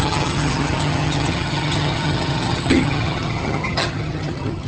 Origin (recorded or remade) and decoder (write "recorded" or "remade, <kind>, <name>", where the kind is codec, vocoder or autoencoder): remade, vocoder, HiFi-GAN